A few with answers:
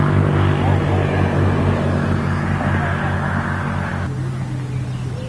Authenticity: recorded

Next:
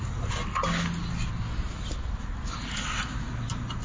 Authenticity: recorded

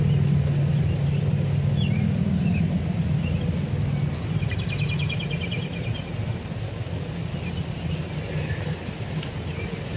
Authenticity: recorded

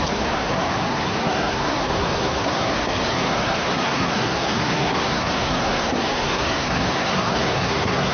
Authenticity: remade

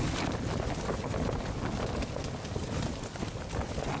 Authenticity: recorded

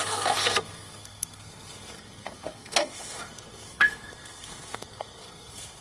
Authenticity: remade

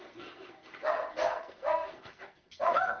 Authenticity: remade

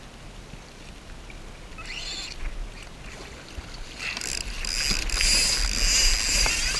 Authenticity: recorded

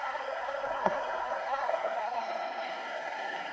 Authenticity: remade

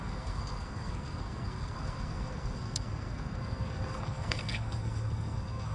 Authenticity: remade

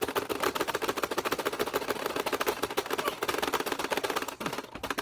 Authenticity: recorded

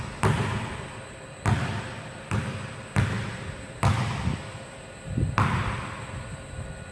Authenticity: recorded